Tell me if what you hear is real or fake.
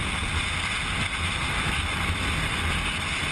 real